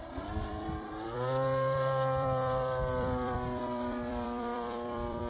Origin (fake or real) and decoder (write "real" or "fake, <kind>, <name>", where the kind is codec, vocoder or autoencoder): fake, vocoder, BigVGAN v2